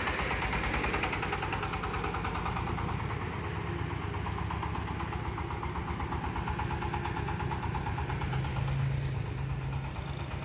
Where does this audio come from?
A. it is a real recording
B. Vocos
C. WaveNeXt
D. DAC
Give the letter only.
A